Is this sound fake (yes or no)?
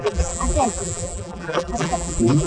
yes